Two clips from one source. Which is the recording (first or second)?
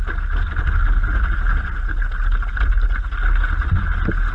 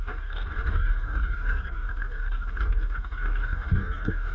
first